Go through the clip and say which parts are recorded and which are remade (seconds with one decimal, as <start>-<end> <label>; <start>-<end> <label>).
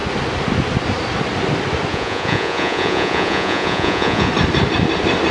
0.0-1.9 recorded; 1.9-4.3 remade; 4.3-5.3 recorded